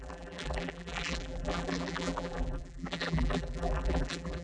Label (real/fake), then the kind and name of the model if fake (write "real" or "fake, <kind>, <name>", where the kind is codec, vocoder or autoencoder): fake, vocoder, BigVGAN v2